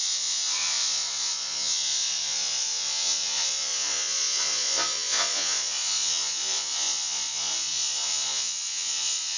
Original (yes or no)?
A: no